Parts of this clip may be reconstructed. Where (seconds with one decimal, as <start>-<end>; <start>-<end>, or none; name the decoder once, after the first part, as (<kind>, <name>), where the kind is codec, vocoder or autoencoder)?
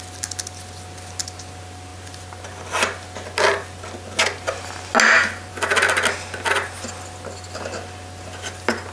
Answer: none